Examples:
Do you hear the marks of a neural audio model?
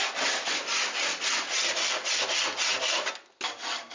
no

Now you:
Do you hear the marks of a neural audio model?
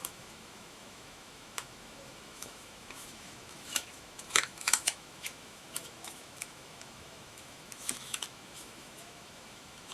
yes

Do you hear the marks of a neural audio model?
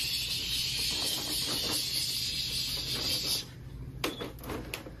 no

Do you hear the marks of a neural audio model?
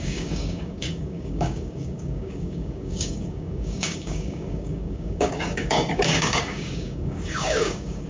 yes